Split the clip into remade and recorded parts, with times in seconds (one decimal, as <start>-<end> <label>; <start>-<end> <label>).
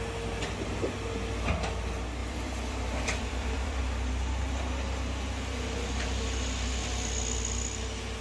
0.0-2.2 recorded; 2.2-3.8 remade; 3.8-8.2 recorded